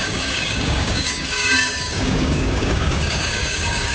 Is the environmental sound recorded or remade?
remade